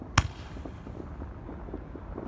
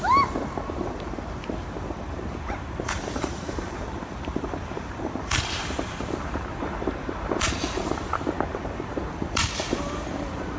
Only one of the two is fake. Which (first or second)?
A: second